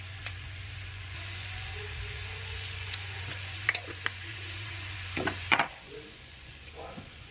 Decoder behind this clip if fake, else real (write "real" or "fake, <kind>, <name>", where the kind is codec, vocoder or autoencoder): fake, vocoder, Vocos